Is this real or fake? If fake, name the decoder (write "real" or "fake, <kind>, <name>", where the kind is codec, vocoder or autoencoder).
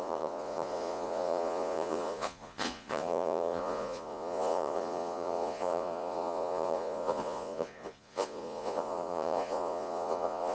fake, vocoder, Vocos